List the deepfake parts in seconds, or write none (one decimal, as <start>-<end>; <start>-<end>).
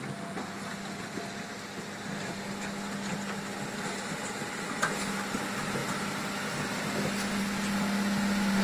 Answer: none